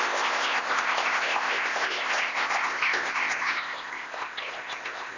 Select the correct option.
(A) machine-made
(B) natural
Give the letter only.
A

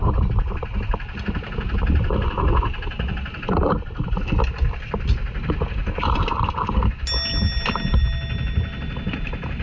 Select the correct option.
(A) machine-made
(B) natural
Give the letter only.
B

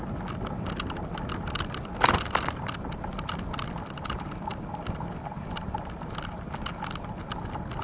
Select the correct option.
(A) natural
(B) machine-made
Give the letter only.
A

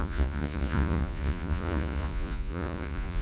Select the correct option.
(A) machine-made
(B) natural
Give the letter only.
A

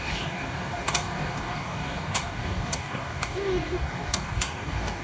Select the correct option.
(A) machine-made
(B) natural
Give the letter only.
A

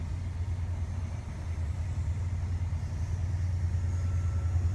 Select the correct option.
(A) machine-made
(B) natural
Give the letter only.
B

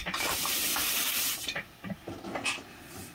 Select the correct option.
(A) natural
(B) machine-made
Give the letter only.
A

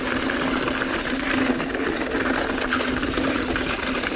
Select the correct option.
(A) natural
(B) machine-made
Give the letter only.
A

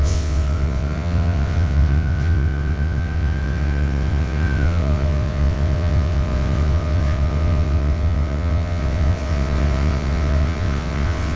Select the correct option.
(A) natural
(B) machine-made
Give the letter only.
B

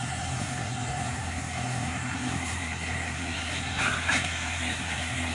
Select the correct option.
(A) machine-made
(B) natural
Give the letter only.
A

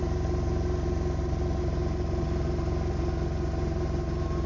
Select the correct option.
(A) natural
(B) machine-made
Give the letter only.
A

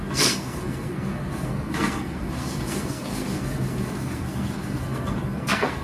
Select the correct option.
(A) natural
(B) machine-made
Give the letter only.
B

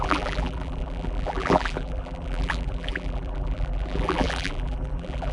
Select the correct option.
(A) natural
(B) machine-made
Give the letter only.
B